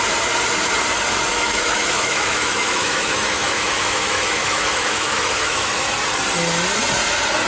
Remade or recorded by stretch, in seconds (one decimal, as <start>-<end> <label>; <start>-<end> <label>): 0.0-1.3 recorded; 1.3-5.8 remade; 5.8-7.5 recorded